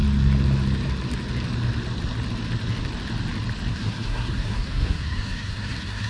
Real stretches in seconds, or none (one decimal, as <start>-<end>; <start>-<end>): 0.0-3.7